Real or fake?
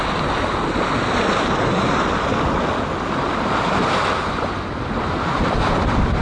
real